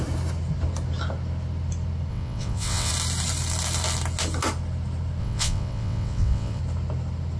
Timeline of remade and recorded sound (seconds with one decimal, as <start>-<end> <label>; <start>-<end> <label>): 0.0-2.1 recorded; 2.1-2.9 remade; 2.9-5.2 recorded; 5.2-6.6 remade; 6.6-7.4 recorded